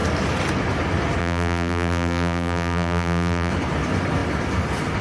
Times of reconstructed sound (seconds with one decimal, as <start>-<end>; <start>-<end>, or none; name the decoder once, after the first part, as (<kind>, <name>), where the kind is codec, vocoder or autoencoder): 1.2-3.5 (vocoder, BigVGAN v2)